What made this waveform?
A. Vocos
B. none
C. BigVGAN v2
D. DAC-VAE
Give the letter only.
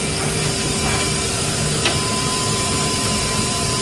B